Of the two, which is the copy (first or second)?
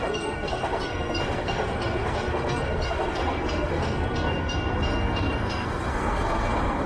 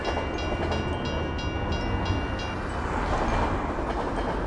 first